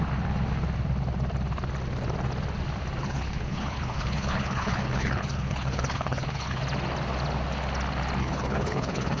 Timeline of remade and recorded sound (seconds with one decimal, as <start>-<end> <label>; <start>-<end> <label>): 0.0-3.0 recorded; 3.0-6.6 remade; 6.6-8.2 recorded; 8.2-9.2 remade